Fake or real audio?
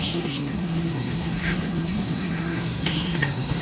fake